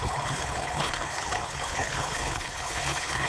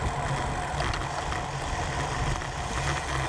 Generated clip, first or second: first